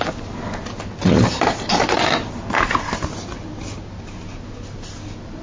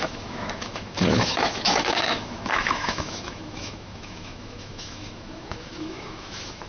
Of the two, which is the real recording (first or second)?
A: first